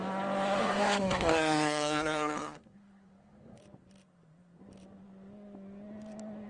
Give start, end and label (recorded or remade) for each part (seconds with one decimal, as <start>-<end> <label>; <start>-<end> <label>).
0.0-0.6 recorded; 0.6-3.6 remade; 3.6-6.5 recorded